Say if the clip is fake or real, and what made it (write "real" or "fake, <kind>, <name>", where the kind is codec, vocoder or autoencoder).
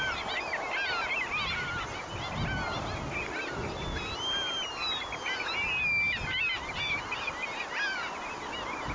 real